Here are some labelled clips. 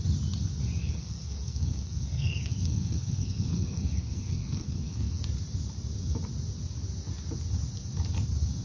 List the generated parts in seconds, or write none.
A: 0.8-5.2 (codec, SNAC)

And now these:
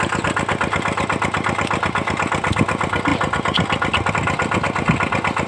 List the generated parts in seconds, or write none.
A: none

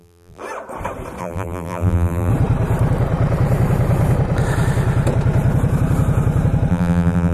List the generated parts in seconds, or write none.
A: 0.0-0.4 (vocoder, BigVGAN v2); 1.2-2.3; 6.7-7.3

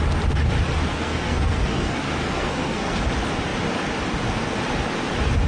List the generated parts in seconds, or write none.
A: 0.9-3.0 (codec, SNAC)

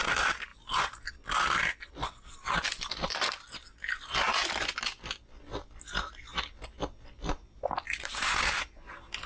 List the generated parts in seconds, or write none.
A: none

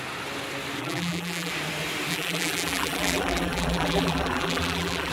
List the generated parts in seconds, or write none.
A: 0.8-1.5 (vocoder, BigVGAN v2); 2.1-5.1